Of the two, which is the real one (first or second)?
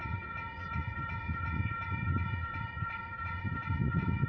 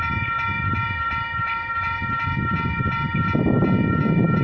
second